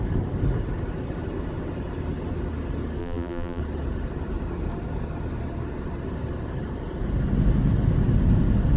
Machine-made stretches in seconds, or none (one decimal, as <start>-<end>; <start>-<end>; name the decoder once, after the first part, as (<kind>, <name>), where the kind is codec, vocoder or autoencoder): 3.0-3.6 (vocoder, BigVGAN v2)